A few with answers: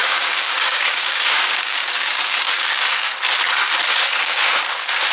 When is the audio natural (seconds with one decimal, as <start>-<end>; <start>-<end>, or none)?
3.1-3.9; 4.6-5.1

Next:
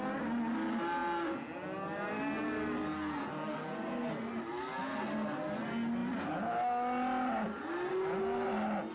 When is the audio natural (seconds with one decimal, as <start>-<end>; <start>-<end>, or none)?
0.0-8.9

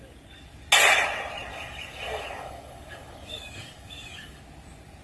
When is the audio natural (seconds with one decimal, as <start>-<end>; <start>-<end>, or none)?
0.0-1.5; 4.4-5.0